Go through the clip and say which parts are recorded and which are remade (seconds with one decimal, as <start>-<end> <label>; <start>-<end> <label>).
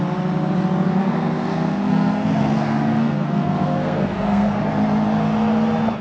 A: 0.0-1.0 recorded; 1.0-4.6 remade; 4.6-6.0 recorded